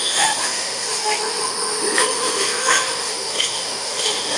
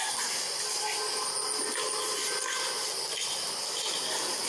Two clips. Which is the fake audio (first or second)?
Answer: first